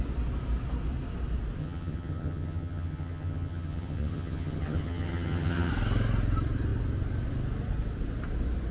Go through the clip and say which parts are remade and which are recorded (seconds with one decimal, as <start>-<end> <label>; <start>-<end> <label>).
0.0-1.6 recorded; 1.6-5.7 remade; 5.7-8.7 recorded